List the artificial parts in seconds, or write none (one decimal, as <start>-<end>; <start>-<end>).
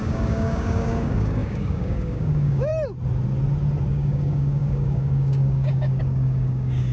0.0-2.7; 3.9-6.9